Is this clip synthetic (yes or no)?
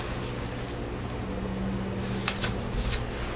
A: no